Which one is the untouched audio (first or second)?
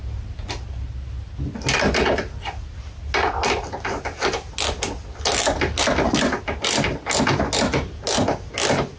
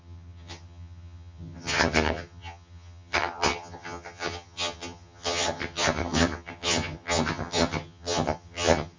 first